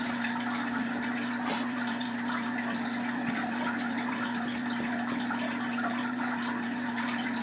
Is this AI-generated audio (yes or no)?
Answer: yes